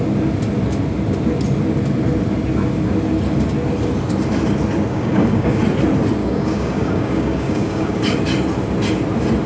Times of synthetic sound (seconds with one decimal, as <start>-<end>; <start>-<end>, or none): 4.9-5.6; 6.2-8.0